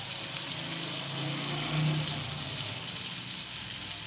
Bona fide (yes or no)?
yes